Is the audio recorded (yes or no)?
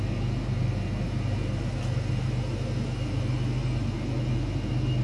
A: yes